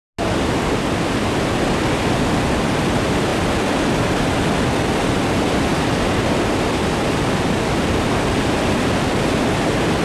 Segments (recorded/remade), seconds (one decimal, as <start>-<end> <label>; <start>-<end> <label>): 0.0-10.0 recorded